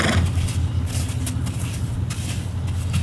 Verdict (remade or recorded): recorded